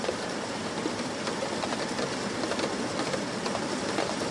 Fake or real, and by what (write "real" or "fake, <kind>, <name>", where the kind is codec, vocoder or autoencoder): real